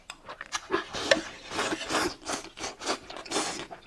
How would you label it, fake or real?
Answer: real